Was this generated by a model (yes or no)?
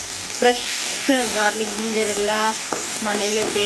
yes